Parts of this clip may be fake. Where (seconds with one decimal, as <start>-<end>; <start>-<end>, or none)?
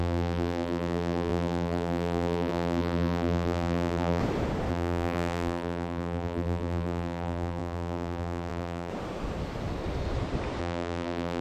0.0-4.2; 4.7-8.9; 10.6-11.4